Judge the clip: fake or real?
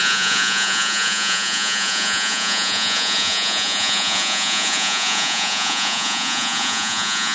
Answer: fake